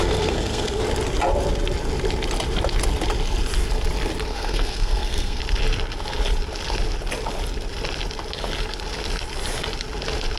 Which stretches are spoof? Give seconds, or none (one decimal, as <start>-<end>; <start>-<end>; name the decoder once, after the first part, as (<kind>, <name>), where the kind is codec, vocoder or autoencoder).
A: 0.0-0.8 (codec, SNAC); 4.3-5.4